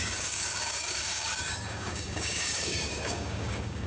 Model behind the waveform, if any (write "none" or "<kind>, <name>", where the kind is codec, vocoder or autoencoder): codec, DAC